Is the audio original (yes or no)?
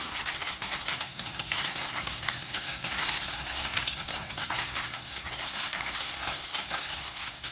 no